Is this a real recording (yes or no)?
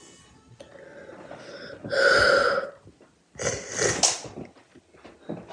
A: yes